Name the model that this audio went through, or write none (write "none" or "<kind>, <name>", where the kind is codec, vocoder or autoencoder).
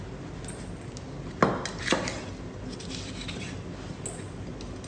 none